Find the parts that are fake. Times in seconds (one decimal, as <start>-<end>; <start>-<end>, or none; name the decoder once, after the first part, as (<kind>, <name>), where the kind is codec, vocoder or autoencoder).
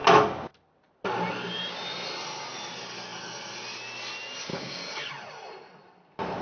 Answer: 4.5-5.1 (codec, DAC)